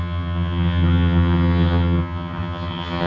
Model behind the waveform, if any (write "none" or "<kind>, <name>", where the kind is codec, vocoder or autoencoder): vocoder, HiFi-GAN